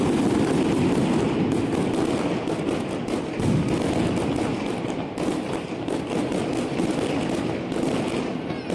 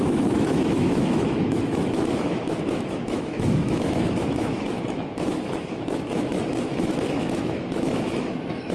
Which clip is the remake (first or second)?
second